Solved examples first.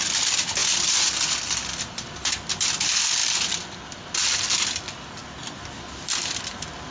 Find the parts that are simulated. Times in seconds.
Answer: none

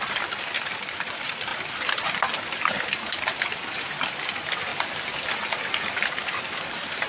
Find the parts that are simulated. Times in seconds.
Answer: 0.0-4.7 (vocoder, BigVGAN v2); 5.5-7.1

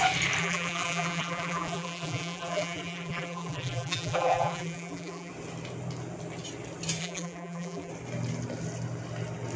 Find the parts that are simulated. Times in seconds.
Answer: 0.4-5.3 (vocoder, BigVGAN v2); 7.0-7.9